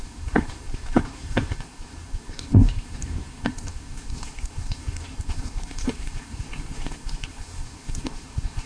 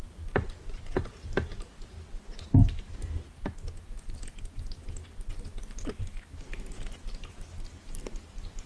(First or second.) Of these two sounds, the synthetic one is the first